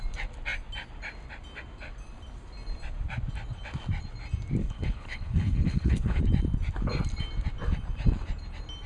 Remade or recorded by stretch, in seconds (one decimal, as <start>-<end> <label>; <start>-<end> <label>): 0.0-4.6 recorded; 4.6-6.2 remade; 6.2-8.9 recorded